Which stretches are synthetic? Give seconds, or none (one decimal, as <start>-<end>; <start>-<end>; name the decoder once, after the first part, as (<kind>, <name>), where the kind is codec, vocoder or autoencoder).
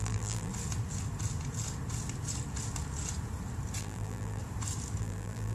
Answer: 0.0-0.5 (vocoder, BigVGAN v2); 3.8-4.4; 5.0-5.5